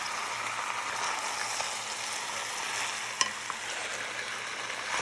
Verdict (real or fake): real